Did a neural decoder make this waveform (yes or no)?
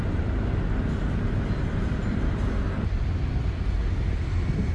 no